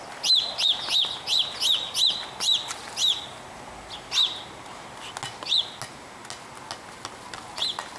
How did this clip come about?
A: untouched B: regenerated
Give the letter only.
A